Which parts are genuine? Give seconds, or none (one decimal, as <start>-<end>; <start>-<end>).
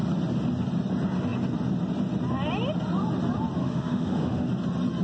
0.0-3.6; 4.5-5.0